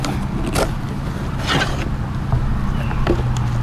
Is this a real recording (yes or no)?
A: yes